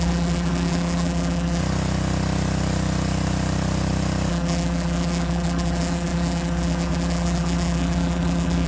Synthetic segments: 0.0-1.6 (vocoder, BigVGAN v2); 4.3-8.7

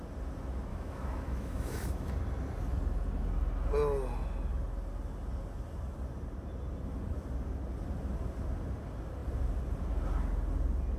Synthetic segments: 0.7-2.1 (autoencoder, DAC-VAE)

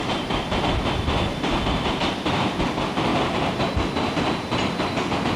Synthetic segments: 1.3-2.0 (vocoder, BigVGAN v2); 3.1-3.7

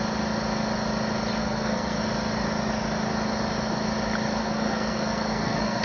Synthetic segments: 1.4-2.0 (codec, SNAC); 4.4-5.8